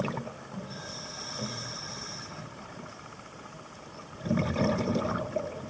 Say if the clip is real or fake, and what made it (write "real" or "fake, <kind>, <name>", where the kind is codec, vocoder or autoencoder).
real